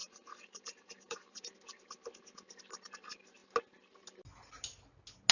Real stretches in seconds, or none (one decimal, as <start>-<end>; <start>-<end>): 1.4-5.3